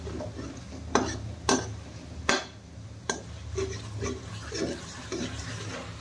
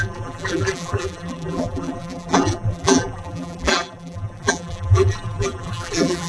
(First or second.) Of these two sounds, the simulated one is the second